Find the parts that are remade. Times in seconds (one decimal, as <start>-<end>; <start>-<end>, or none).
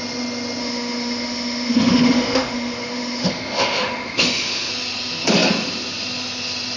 0.6-4.7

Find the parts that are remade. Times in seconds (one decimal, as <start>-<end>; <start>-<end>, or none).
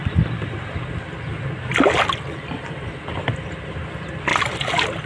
none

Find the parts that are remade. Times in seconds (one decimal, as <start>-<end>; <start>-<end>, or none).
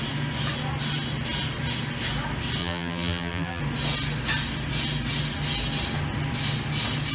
2.6-3.6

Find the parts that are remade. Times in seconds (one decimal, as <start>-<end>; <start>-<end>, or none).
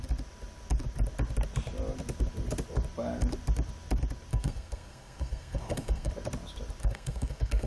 4.3-6.1; 6.8-7.7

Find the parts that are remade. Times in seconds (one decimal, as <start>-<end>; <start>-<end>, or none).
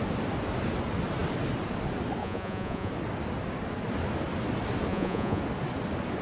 2.2-2.9; 4.9-5.4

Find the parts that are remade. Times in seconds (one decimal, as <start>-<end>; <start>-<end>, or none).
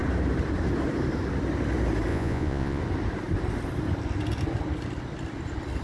2.1-2.8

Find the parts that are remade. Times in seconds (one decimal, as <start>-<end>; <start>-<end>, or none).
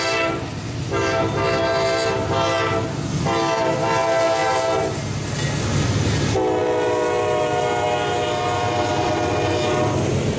none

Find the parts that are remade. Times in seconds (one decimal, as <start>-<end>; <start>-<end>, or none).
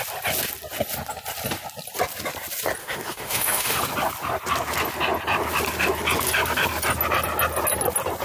2.8-3.8